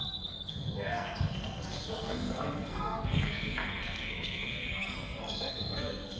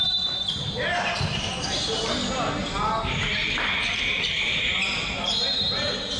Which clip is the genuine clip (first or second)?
second